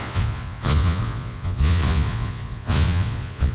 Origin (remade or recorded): remade